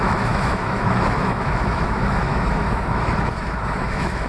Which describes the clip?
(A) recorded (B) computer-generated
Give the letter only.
B